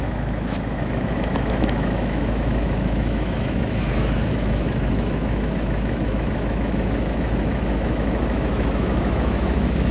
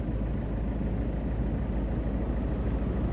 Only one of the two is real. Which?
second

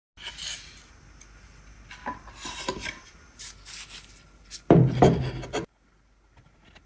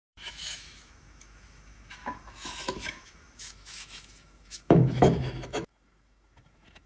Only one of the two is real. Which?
first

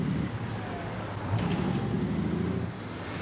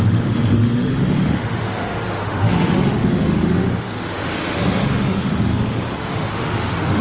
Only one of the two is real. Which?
first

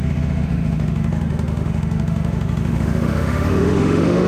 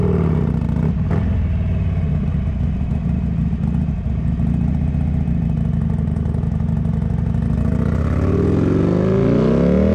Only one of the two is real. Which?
second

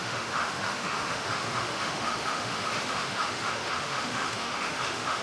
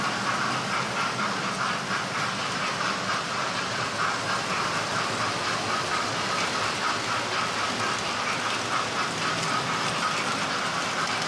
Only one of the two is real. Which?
second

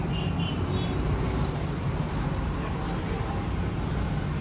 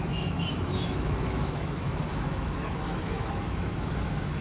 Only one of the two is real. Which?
first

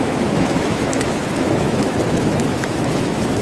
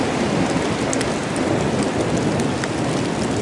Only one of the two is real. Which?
second